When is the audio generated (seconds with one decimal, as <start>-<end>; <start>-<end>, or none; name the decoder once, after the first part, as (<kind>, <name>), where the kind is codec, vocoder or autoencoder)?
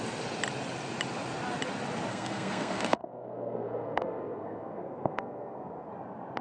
2.1-5.9 (codec, SNAC)